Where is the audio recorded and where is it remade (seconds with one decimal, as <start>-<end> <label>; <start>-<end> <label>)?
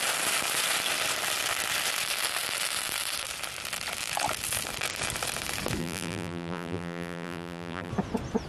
0.0-5.8 recorded; 5.8-7.9 remade; 7.9-8.5 recorded